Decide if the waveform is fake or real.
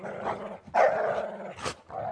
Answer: real